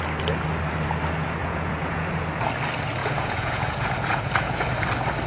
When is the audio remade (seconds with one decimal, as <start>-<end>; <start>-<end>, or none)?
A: 1.4-2.2; 3.0-4.6